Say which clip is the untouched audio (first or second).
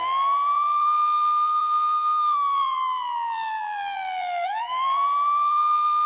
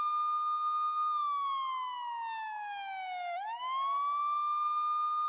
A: second